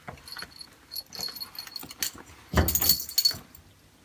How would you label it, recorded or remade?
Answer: recorded